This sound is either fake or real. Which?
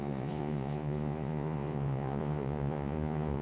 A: fake